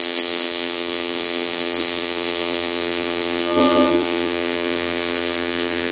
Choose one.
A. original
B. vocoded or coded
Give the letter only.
B